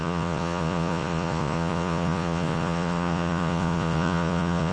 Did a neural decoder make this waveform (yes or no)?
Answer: yes